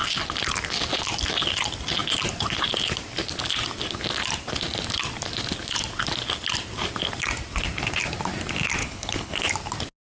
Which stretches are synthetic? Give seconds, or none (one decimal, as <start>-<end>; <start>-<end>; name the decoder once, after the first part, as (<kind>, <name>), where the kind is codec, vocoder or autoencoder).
8.8-9.5 (codec, HILCodec)